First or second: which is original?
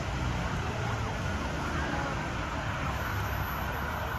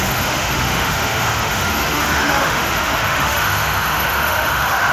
first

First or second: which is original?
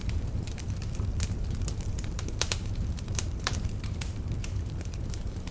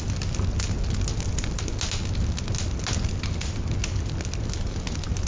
second